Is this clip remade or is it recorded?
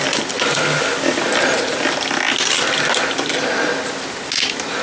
recorded